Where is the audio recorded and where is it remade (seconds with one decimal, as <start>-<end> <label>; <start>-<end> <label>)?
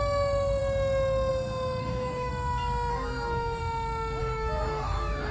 0.0-1.8 recorded; 1.8-2.3 remade; 2.3-2.9 recorded; 2.9-3.6 remade; 3.6-4.2 recorded; 4.2-5.3 remade